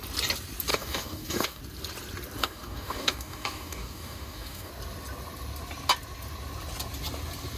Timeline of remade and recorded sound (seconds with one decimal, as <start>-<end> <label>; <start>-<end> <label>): 0.0-0.7 recorded; 0.7-1.6 remade; 1.6-2.4 recorded; 2.4-4.7 remade; 4.7-7.6 recorded